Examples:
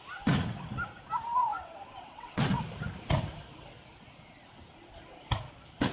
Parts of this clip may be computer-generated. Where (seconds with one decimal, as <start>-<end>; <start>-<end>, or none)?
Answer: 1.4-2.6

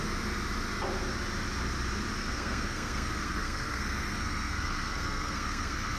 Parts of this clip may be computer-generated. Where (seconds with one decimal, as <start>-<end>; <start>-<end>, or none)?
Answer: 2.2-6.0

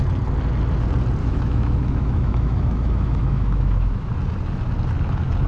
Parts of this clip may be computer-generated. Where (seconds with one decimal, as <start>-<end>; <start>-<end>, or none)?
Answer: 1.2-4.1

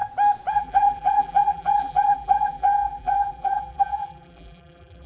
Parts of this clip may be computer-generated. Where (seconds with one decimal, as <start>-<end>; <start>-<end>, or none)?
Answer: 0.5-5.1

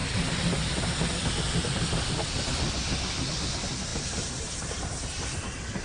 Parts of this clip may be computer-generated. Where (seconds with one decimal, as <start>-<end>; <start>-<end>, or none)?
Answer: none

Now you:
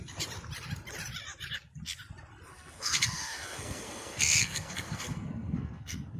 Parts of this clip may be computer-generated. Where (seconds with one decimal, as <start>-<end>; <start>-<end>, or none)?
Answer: 2.5-6.2